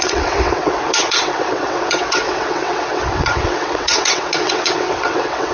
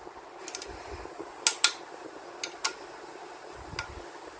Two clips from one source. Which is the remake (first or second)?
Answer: first